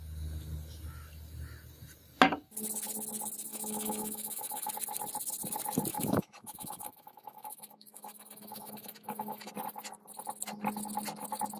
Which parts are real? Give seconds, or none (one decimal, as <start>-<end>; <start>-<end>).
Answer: 0.0-3.5; 4.7-5.9; 9.5-11.6